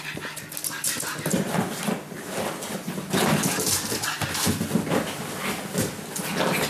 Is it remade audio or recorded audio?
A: recorded